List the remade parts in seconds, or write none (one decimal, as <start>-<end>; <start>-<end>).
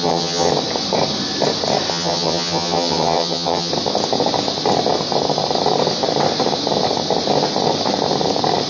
0.0-0.5; 1.9-3.7